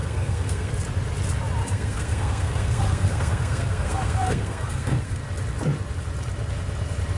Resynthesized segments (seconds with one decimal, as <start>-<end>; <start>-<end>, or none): 0.0-0.7; 1.6-5.2